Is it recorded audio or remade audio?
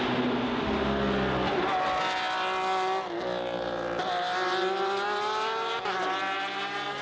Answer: recorded